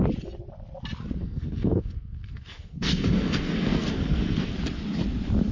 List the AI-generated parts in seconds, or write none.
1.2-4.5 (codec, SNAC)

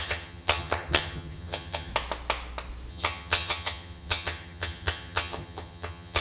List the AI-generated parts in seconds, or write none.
0.0-1.9 (vocoder, HiFi-GAN); 2.9-6.2

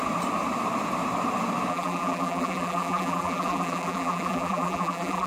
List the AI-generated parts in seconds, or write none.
1.7-5.3 (vocoder, BigVGAN v2)

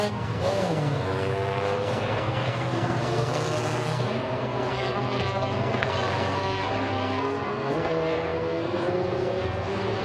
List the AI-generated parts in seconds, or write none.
0.0-10.0 (codec, SNAC)